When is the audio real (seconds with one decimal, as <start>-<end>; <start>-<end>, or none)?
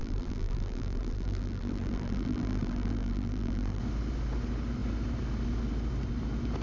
3.8-6.6